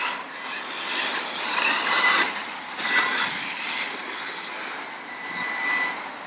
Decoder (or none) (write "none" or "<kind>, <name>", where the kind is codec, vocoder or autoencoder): none